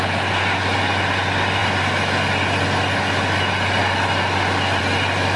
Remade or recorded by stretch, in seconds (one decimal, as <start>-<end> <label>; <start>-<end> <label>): 0.0-5.4 recorded